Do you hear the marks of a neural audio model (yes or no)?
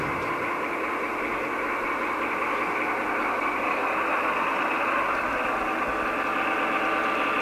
no